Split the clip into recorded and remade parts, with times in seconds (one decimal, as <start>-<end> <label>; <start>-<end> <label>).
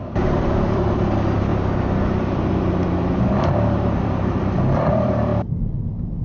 0.0-1.5 remade; 1.5-4.0 recorded; 4.0-6.2 remade